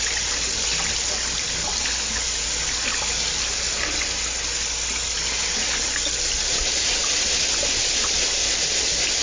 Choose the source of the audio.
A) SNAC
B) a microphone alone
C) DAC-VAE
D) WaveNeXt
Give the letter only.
B